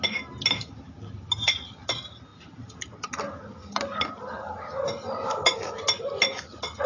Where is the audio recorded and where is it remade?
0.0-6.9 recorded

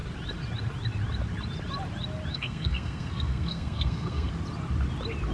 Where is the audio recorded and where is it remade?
0.0-2.3 recorded; 2.3-4.3 remade; 4.3-5.3 recorded

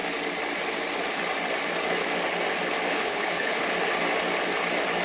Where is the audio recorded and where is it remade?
0.0-2.9 recorded; 2.9-3.6 remade; 3.6-5.0 recorded

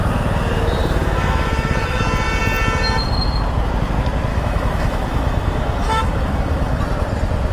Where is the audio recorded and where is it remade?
0.0-0.8 recorded; 0.8-2.0 remade; 2.0-4.3 recorded; 4.3-6.8 remade; 6.8-7.5 recorded

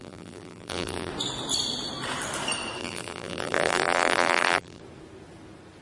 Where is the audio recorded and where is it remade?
0.0-1.1 remade; 1.1-2.8 recorded; 2.8-4.8 remade; 4.8-5.8 recorded

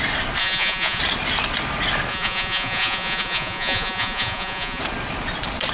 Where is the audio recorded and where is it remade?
0.0-0.4 recorded; 0.4-1.0 remade; 1.0-2.1 recorded; 2.1-4.8 remade; 4.8-5.7 recorded